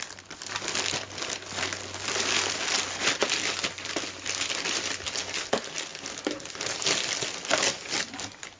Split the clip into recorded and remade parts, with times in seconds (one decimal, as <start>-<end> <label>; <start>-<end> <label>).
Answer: 0.0-8.6 recorded